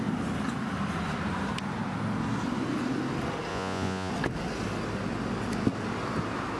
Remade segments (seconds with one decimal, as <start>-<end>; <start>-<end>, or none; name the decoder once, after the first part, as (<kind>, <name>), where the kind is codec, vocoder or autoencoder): 3.5-4.1 (vocoder, Vocos)